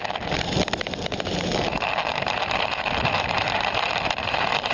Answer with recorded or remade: remade